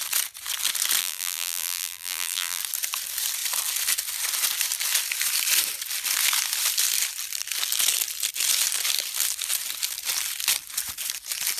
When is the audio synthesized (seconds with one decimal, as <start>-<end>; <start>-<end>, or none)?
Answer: 1.0-2.6